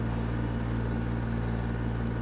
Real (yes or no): yes